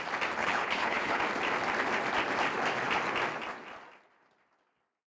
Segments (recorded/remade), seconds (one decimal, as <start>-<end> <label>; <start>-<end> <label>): 0.0-0.4 recorded; 0.4-1.2 remade; 1.2-5.1 recorded